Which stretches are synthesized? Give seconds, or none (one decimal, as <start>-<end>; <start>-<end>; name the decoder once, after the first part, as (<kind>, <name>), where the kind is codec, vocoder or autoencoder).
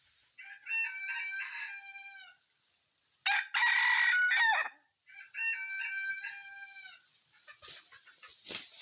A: none